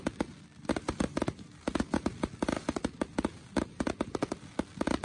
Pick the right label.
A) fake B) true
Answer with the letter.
B